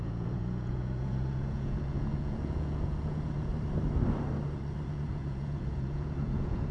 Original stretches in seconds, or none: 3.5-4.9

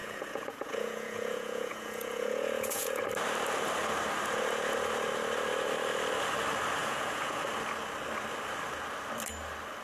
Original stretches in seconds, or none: 3.0-6.8; 7.4-9.8

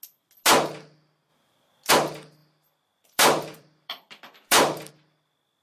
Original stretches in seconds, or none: 0.0-1.3; 1.9-2.4; 4.9-5.6

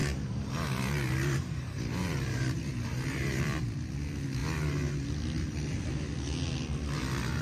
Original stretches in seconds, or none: 3.6-7.4

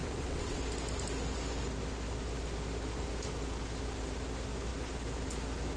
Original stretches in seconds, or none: 0.6-5.8

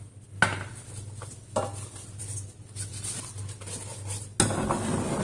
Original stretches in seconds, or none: 0.0-5.2

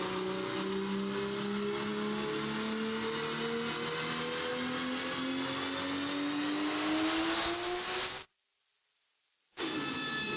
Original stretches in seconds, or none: 0.0-10.4

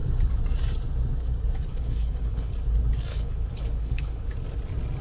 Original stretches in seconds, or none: 0.0-1.7; 2.5-3.1; 4.2-5.0